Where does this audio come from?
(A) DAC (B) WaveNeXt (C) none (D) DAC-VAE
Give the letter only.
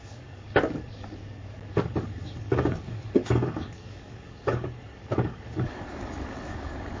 A